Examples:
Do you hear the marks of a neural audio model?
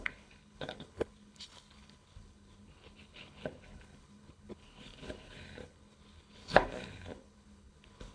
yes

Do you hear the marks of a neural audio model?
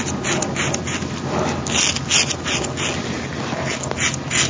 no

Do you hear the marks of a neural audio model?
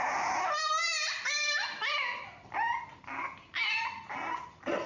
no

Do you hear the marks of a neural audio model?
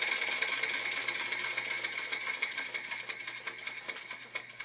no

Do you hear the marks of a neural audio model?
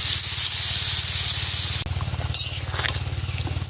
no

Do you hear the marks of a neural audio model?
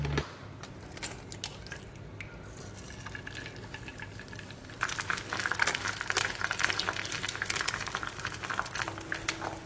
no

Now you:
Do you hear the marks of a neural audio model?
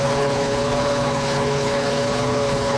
yes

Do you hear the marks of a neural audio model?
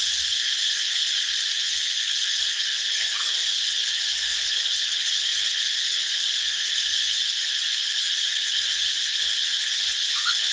yes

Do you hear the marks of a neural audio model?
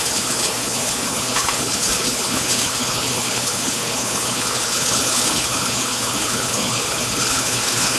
yes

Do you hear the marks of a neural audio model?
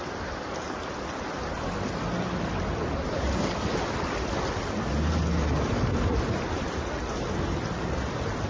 no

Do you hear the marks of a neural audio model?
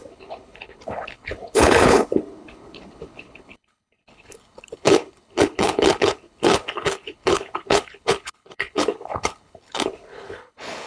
yes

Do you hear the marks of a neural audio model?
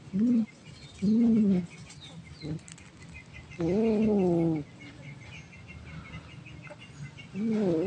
no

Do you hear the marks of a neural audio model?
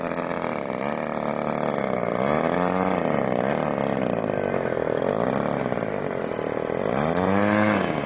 no